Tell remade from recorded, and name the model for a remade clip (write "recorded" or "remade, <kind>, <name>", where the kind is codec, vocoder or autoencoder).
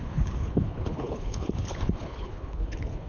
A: remade, codec, HILCodec